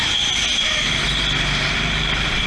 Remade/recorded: recorded